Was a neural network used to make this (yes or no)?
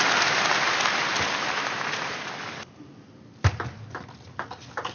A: no